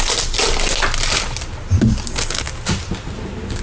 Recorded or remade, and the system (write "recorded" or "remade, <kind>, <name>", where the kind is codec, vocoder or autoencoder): recorded